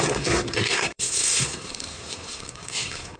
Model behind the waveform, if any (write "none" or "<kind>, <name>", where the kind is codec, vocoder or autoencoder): codec, SNAC